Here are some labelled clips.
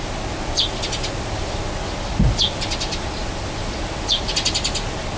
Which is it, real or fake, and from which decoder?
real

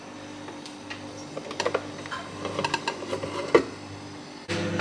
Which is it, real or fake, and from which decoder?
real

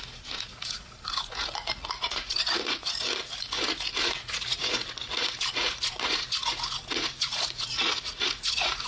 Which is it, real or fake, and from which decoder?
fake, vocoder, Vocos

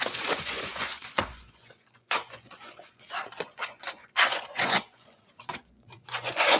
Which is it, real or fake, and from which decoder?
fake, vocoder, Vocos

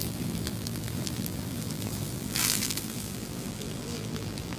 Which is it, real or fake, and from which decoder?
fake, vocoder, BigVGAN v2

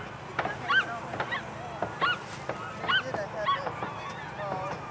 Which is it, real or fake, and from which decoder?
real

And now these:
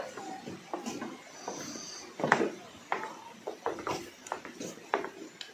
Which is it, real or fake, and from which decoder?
real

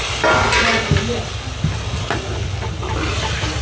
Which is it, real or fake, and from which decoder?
real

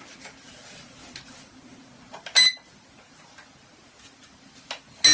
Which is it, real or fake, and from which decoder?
real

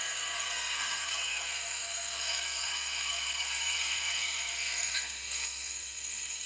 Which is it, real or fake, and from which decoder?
fake, codec, SNAC